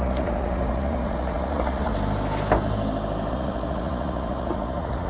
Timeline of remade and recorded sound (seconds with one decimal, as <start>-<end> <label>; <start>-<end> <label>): 0.0-1.9 remade; 1.9-3.3 recorded; 3.3-5.1 remade